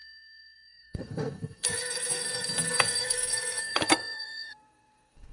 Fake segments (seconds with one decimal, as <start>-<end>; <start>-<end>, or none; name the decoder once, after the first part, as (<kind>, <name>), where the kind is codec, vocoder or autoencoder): 0.0-5.3 (codec, SNAC)